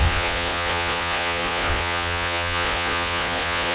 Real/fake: fake